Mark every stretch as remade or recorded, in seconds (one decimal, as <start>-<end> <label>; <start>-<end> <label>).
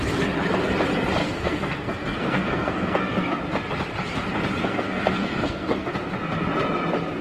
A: 0.0-1.2 recorded; 1.2-3.4 remade; 3.4-4.6 recorded; 4.6-5.9 remade; 5.9-7.2 recorded